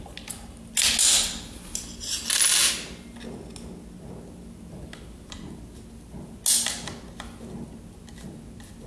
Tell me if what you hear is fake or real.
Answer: real